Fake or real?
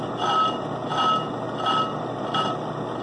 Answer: real